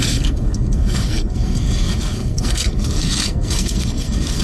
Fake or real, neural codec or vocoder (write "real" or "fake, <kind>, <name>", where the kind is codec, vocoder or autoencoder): fake, codec, SNAC